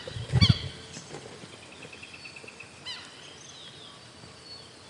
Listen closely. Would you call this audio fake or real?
real